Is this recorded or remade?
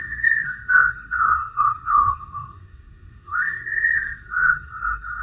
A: remade